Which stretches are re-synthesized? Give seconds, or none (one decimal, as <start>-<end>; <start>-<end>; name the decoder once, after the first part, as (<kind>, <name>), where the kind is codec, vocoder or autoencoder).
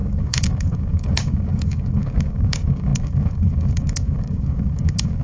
0.0-5.2 (codec, DAC)